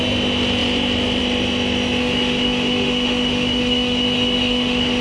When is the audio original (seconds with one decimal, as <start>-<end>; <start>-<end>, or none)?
0.0-2.0